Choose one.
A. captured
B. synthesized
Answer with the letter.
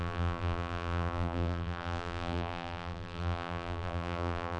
B